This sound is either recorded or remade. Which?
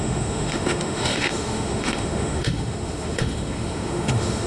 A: remade